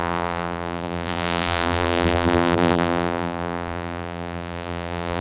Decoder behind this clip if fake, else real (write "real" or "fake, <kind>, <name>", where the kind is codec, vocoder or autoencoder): fake, vocoder, BigVGAN v2